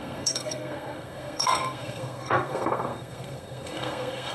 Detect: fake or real fake